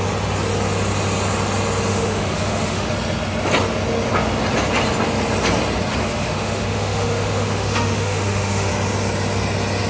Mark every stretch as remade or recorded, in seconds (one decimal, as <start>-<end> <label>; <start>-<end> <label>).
0.0-1.9 recorded; 1.9-2.9 remade; 2.9-6.0 recorded; 6.0-8.7 remade; 8.7-9.9 recorded